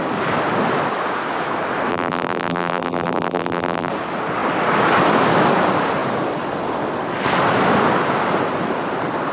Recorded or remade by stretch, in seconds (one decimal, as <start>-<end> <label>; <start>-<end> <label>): 0.0-1.9 recorded; 1.9-3.9 remade; 3.9-9.3 recorded